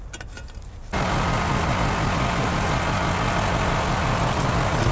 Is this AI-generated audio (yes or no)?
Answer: no